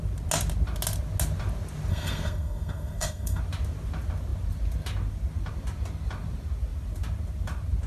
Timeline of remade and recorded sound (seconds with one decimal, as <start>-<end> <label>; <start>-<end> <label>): 0.0-1.9 recorded; 1.9-3.4 remade; 3.4-7.9 recorded